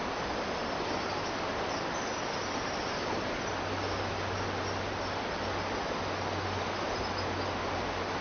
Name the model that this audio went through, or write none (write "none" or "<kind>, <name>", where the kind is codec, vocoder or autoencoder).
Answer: none